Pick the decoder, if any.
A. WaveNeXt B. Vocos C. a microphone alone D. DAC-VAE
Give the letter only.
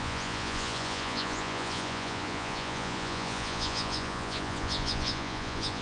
B